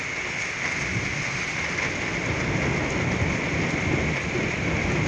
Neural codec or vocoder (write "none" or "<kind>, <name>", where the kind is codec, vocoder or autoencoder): none